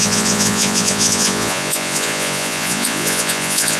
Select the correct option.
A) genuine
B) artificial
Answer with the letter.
B